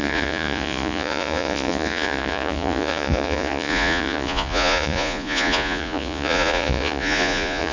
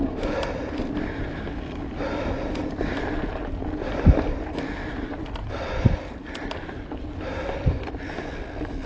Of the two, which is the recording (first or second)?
second